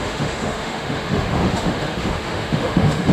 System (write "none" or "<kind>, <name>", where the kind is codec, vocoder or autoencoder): autoencoder, DAC-VAE